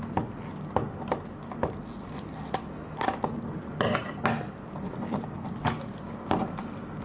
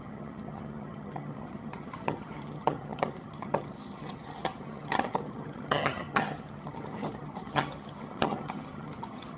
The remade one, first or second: second